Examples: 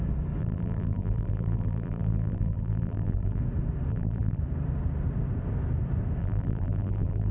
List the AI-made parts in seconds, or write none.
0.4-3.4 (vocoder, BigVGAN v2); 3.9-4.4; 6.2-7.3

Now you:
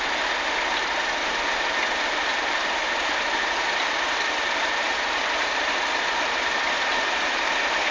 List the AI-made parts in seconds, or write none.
none

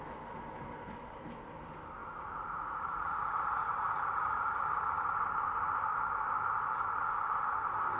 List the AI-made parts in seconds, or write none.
2.0-4.8 (vocoder, BigVGAN v2)

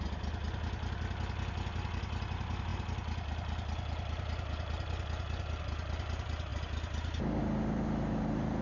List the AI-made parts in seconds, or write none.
none

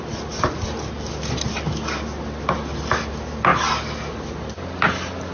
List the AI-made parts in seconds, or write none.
3.5-5.3 (vocoder, BigVGAN v2)

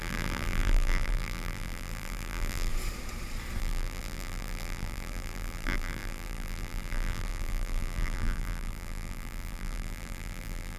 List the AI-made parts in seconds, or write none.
0.0-2.7 (vocoder, BigVGAN v2); 3.6-10.8